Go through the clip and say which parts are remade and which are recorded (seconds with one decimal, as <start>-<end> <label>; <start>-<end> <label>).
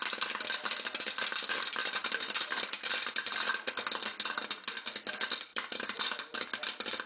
0.0-1.8 recorded; 1.8-3.5 remade; 3.5-5.5 recorded; 5.5-6.2 remade; 6.2-7.1 recorded